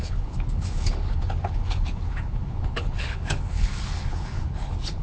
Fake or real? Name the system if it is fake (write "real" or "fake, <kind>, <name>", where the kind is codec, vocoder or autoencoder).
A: fake, codec, HILCodec